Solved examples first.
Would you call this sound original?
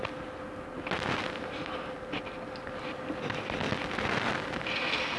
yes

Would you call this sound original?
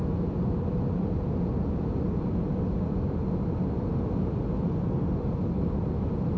yes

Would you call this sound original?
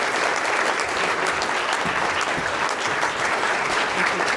no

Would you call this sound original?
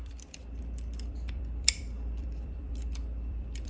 no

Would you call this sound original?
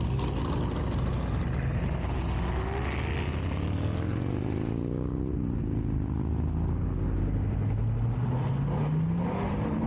yes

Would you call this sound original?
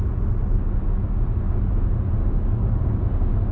yes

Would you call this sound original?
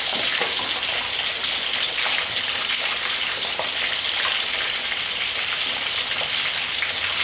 yes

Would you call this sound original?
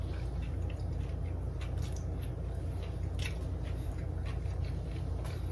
yes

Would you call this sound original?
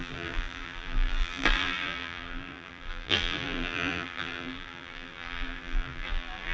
no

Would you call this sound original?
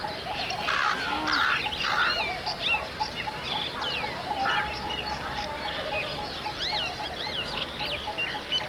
yes